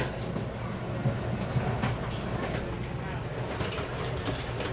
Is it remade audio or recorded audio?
recorded